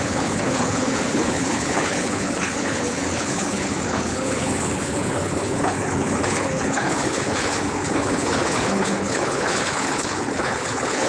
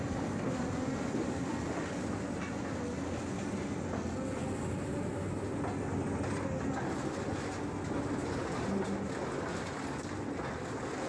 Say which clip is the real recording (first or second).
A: second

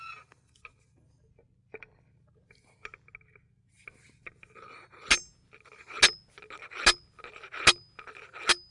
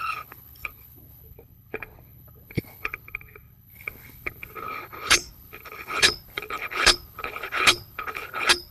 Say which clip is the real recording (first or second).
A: first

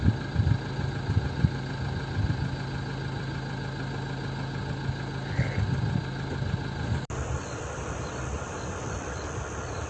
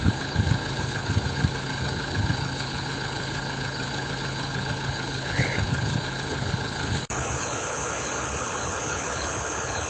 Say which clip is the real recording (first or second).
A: first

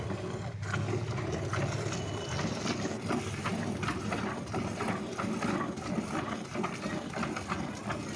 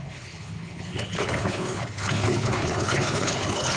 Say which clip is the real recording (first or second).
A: first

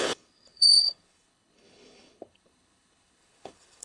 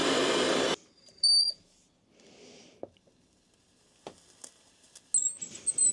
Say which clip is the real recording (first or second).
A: second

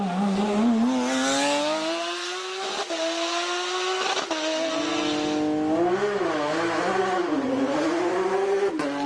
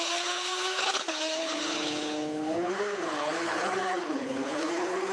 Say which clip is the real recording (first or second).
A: first